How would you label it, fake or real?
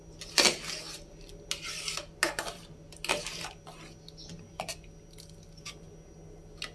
real